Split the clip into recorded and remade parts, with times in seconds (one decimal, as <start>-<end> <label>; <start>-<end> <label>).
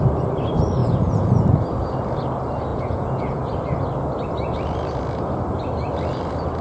0.0-0.8 recorded; 0.8-1.4 remade; 1.4-2.7 recorded; 2.7-3.4 remade; 3.4-6.6 recorded